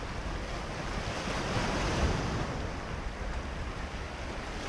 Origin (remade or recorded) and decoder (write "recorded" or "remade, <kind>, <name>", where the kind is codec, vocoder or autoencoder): recorded